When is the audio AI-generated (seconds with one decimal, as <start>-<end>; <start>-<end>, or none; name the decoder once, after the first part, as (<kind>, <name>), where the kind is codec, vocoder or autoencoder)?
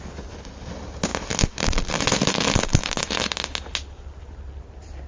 none